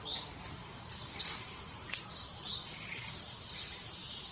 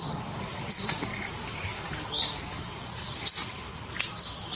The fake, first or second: first